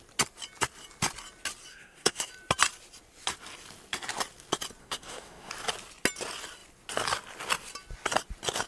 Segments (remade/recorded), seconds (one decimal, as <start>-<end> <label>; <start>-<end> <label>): 0.0-1.7 recorded; 1.7-2.3 remade; 2.3-4.8 recorded; 4.8-5.5 remade; 5.5-8.7 recorded